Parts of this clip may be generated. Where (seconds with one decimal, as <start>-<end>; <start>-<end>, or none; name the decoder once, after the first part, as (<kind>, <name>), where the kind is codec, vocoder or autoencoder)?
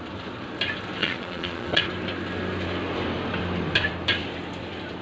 1.0-1.8 (vocoder, Vocos)